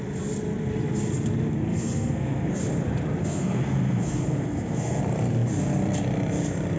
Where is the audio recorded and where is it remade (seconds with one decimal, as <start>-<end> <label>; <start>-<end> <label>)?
0.0-1.7 recorded; 1.7-2.6 remade; 2.6-3.2 recorded; 3.2-5.0 remade; 5.0-6.8 recorded